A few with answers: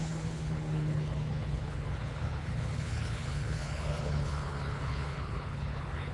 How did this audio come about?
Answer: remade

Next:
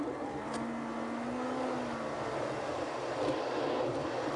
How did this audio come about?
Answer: recorded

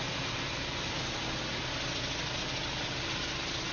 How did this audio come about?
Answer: recorded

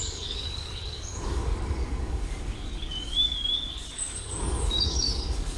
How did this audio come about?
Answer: remade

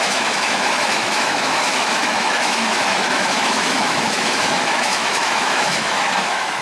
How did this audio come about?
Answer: remade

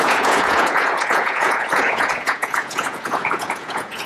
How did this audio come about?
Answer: remade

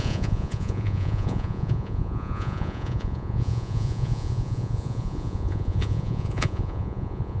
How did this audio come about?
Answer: remade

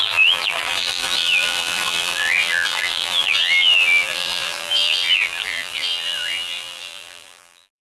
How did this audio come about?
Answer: remade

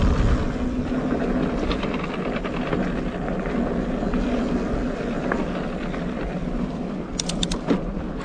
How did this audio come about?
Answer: recorded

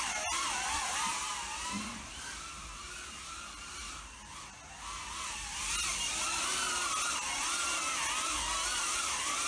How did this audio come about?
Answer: recorded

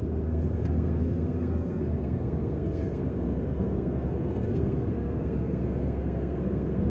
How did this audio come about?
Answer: remade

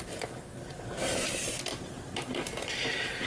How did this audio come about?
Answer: recorded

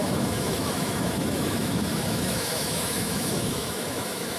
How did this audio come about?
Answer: remade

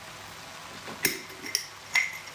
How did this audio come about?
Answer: recorded